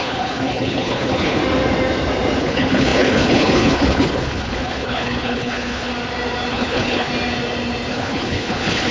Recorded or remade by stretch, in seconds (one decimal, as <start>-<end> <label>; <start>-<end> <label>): 0.0-1.4 remade; 1.4-2.4 recorded; 2.4-5.9 remade; 5.9-6.5 recorded; 6.5-7.1 remade; 7.1-7.9 recorded; 7.9-8.9 remade